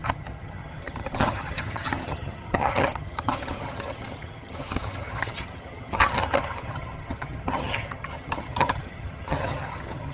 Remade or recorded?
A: remade